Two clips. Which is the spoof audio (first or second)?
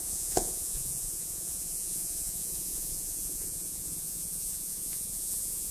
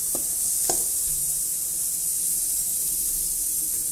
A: first